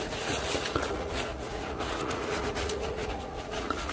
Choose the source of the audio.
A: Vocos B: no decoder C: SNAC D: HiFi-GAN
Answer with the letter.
A